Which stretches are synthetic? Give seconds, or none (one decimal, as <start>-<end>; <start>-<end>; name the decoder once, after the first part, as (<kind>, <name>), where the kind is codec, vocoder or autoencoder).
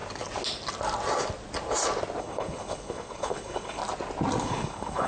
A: 2.2-3.8 (codec, HILCodec); 4.4-5.1